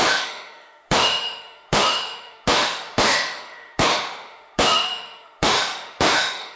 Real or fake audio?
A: fake